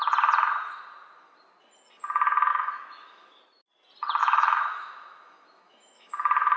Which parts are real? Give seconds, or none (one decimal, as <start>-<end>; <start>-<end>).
0.0-2.5; 3.4-4.2